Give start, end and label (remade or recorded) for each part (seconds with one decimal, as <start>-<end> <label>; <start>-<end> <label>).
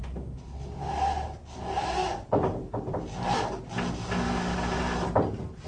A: 0.0-5.7 recorded